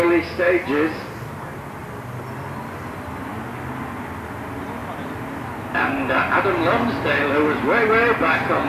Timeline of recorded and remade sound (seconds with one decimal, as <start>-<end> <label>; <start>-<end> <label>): 0.0-1.8 recorded; 1.8-3.4 remade; 3.4-8.7 recorded